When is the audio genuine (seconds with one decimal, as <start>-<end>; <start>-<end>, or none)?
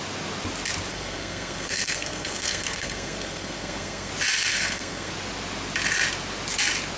0.0-0.9; 4.1-4.5; 5.1-7.0